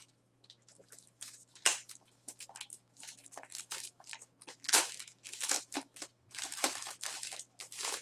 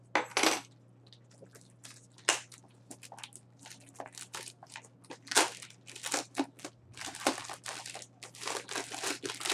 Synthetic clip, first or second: first